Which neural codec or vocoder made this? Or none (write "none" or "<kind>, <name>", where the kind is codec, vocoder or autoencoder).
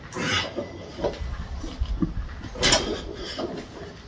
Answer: none